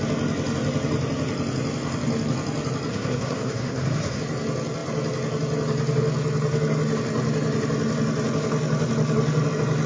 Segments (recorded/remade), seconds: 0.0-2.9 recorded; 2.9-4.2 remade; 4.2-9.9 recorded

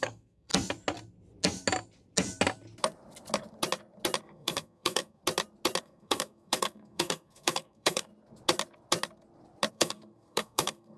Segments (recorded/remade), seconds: 0.0-0.5 remade; 0.5-4.2 recorded; 4.2-5.2 remade; 5.2-5.8 recorded; 5.8-8.1 remade; 8.1-9.7 recorded; 9.7-11.0 remade

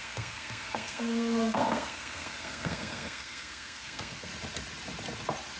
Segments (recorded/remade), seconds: 0.0-4.3 remade; 4.3-5.6 recorded

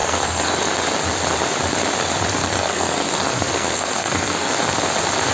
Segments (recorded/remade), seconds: 0.0-0.5 remade; 0.5-2.4 recorded; 2.4-4.5 remade; 4.5-5.3 recorded